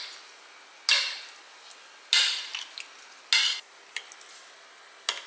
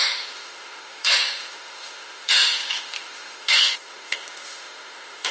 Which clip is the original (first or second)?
first